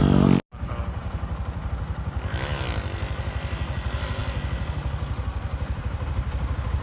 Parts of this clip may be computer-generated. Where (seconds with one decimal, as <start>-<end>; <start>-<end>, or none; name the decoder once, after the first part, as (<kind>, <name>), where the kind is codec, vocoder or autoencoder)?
none

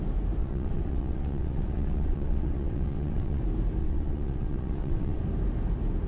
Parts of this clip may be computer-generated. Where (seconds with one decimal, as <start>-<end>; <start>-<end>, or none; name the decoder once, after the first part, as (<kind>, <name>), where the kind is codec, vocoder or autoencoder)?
0.4-3.4 (vocoder, WaveNeXt); 3.8-5.2

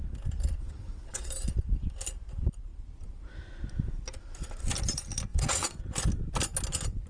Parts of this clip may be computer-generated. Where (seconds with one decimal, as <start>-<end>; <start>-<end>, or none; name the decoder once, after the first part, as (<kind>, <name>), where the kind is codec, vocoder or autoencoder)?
0.6-1.3 (vocoder, WaveNeXt); 5.3-5.8

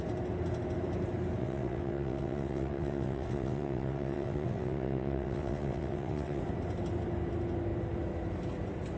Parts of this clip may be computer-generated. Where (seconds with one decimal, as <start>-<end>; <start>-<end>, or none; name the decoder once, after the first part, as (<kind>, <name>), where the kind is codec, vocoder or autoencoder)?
1.4-6.4 (vocoder, WaveNeXt)